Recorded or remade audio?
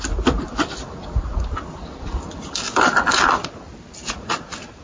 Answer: recorded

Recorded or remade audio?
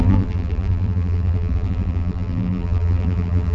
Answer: remade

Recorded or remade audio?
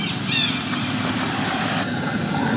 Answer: remade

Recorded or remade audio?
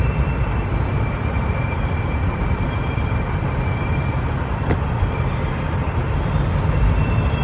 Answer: remade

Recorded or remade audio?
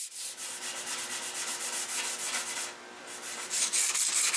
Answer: recorded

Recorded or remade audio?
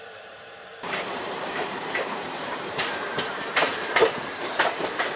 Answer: remade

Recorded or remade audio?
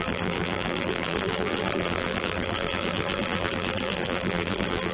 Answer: remade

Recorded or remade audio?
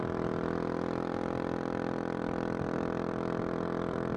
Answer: remade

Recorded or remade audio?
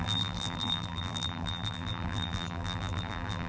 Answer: remade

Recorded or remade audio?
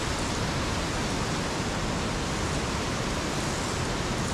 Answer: recorded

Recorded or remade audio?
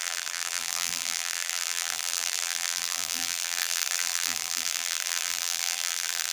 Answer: remade